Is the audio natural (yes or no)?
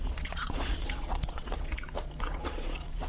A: no